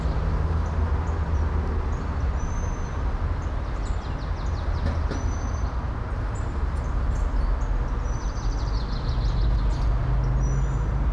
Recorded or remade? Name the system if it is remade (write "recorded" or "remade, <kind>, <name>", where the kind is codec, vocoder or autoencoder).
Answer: recorded